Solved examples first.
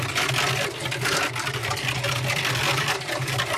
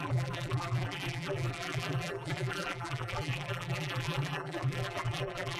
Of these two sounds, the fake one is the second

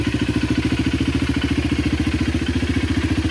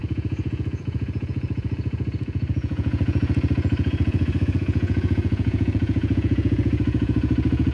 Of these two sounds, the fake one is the second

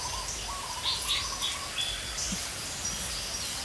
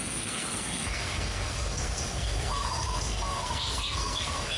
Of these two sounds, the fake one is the second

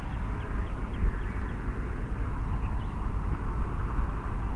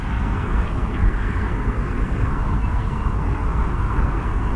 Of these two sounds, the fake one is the second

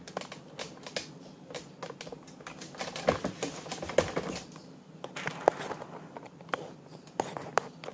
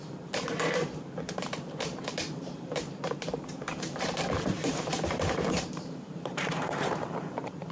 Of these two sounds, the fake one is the second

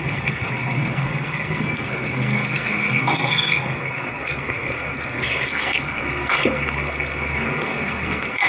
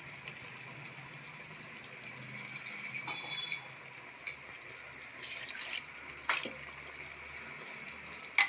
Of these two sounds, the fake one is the first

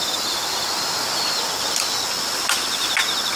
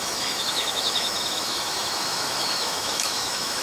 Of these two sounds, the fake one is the second